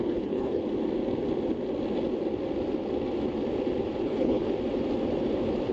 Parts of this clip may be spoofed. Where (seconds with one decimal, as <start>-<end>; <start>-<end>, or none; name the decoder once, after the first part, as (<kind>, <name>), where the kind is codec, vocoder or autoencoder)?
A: 0.0-0.6 (codec, HILCodec); 4.0-4.4